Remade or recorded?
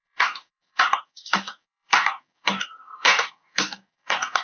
remade